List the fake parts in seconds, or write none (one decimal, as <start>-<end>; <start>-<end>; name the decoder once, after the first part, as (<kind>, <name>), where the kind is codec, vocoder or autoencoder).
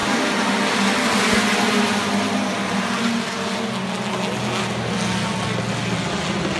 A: none